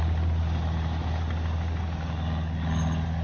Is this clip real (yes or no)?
yes